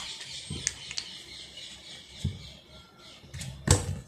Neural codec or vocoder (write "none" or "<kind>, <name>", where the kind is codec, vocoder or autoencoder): none